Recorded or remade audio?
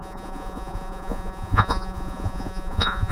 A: remade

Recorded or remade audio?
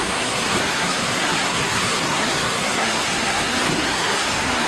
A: remade